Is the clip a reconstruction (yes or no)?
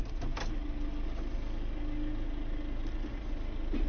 no